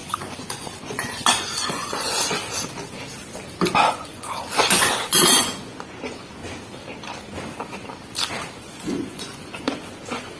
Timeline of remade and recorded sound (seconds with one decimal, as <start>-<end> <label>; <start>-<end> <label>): 0.0-2.4 remade; 2.4-3.9 recorded; 3.9-6.4 remade; 6.4-8.6 recorded; 8.6-10.4 remade